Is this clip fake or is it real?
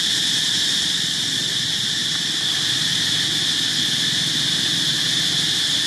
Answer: real